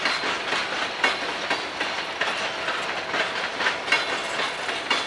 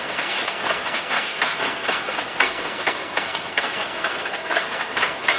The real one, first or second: first